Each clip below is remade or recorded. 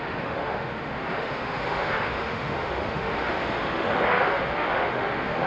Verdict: remade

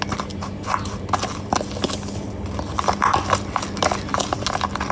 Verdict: recorded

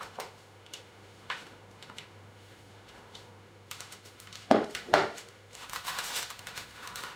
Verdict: remade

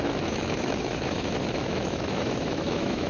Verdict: remade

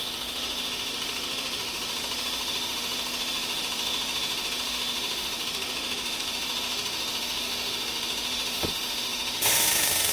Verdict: remade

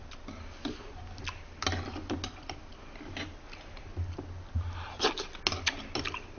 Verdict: recorded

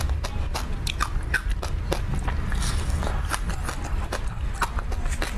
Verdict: recorded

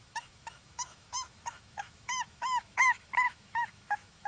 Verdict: remade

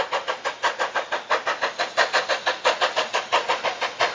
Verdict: recorded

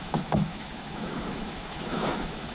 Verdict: remade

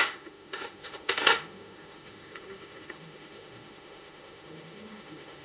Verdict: remade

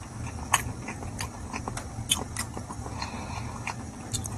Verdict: recorded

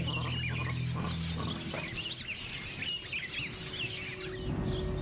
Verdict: recorded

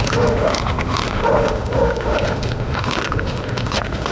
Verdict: remade